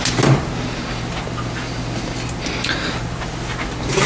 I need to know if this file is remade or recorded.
recorded